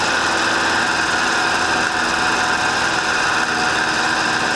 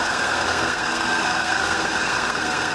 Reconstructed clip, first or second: second